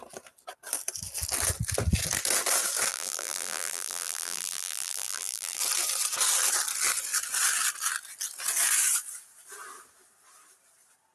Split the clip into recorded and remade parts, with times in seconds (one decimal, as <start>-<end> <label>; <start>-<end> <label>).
0.0-2.9 recorded; 2.9-5.6 remade; 5.6-11.1 recorded